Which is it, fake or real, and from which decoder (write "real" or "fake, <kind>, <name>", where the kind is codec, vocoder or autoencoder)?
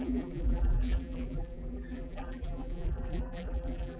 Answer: fake, vocoder, BigVGAN v2